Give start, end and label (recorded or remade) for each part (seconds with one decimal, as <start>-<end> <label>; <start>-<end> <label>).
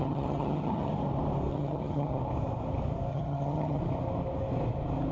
0.0-0.9 remade; 0.9-1.5 recorded; 1.5-2.2 remade; 2.2-3.1 recorded; 3.1-3.8 remade; 3.8-5.1 recorded